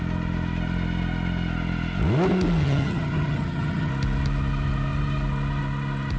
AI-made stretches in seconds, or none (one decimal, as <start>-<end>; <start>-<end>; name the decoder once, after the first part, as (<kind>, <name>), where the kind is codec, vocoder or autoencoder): 2.6-3.9 (vocoder, HiFi-GAN)